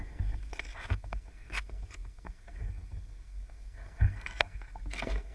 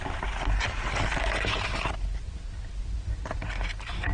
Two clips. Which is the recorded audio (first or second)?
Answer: second